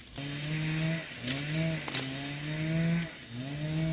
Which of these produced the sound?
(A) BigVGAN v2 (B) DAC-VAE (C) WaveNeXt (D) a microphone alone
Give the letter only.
D